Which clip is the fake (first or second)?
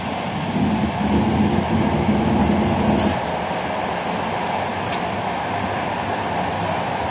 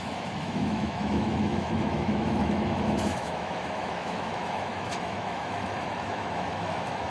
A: second